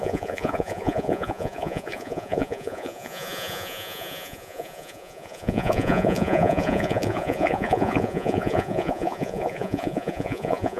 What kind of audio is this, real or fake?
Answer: fake